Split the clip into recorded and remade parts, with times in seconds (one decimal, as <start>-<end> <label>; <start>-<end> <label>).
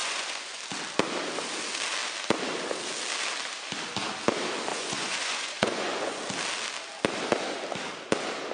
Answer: 0.0-0.6 remade; 0.6-4.7 recorded; 4.7-6.2 remade; 6.2-8.5 recorded